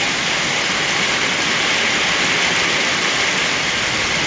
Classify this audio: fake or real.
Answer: real